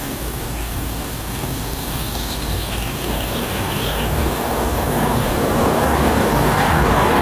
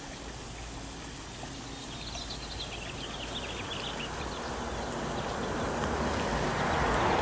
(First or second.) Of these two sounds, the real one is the second